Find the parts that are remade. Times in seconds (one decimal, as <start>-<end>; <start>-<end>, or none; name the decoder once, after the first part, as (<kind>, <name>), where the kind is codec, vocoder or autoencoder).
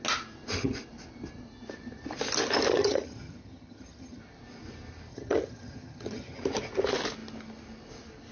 2.7-4.2 (vocoder, HiFi-GAN); 5.1-6.4